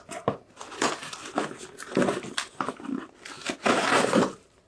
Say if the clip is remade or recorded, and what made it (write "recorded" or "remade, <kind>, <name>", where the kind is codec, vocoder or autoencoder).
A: recorded